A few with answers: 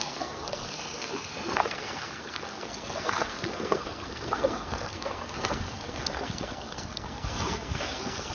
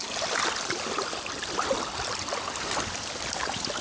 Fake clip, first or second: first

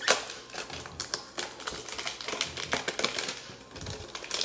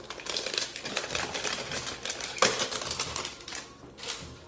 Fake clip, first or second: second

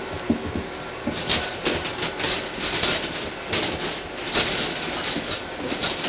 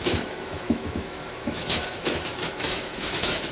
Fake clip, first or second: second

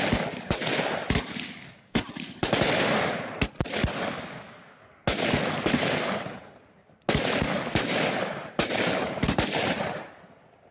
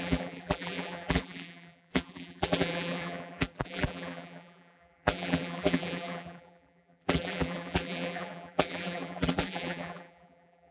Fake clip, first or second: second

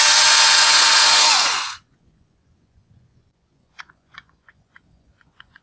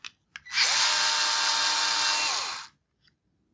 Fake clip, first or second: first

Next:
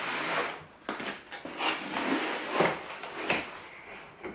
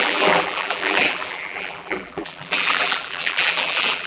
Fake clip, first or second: second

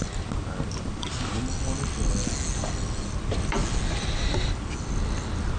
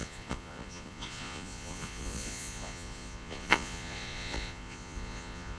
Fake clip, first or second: second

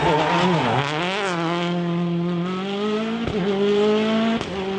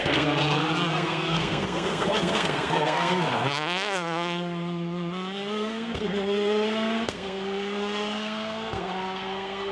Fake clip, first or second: second